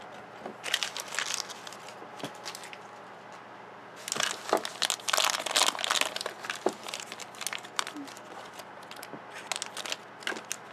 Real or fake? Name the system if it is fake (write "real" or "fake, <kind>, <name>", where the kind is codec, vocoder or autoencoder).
real